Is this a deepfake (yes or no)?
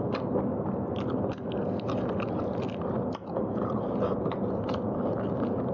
no